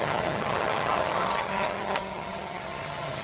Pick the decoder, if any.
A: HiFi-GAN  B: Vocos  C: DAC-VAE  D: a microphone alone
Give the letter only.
A